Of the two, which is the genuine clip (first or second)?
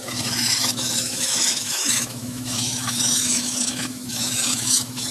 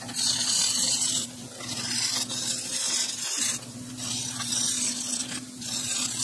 second